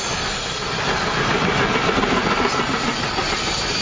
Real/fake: real